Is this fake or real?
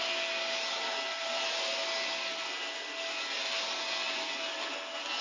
real